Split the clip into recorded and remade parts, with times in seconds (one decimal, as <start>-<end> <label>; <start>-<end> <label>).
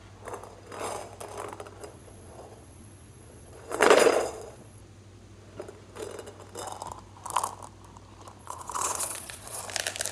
0.0-1.8 recorded; 1.8-4.8 remade; 4.8-8.4 recorded; 8.4-9.6 remade; 9.6-10.1 recorded